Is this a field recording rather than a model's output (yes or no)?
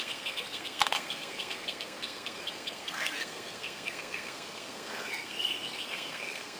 no